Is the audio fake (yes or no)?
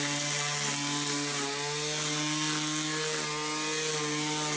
no